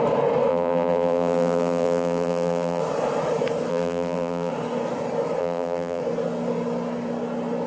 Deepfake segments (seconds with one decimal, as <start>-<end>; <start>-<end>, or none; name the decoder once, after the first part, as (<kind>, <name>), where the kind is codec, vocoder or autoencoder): 0.5-2.8 (vocoder, BigVGAN v2); 3.7-4.5; 5.4-6.0